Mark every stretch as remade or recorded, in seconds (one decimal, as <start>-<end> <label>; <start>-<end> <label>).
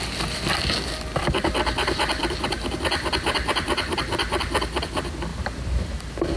0.0-5.3 recorded; 5.3-6.4 remade